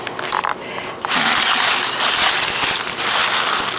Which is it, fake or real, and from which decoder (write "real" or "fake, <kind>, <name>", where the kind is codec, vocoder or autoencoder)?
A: real